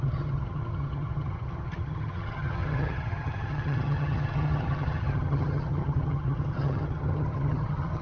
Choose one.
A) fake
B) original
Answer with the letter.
A